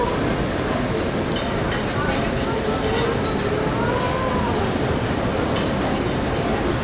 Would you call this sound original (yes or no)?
yes